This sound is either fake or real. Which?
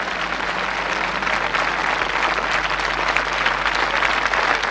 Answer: real